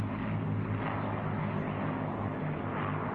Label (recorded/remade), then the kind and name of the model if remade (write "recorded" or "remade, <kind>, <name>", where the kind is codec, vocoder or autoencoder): recorded